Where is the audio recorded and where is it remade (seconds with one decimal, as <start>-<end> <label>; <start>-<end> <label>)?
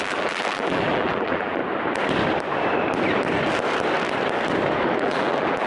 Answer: 0.0-1.6 remade; 1.6-5.0 recorded; 5.0-5.7 remade